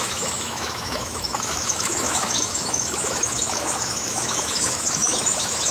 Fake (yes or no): yes